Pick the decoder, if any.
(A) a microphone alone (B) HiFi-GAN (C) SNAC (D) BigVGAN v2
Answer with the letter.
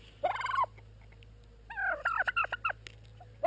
A